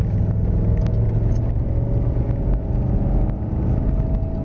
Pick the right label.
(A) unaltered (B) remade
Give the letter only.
A